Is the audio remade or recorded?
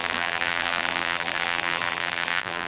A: remade